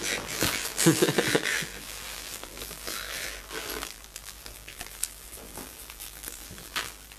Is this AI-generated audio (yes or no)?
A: yes